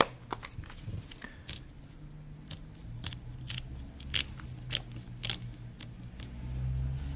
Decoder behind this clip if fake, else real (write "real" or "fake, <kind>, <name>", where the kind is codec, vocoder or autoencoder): real